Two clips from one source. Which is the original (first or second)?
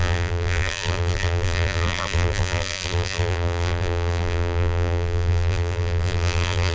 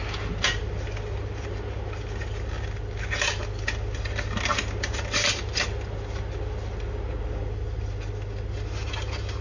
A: second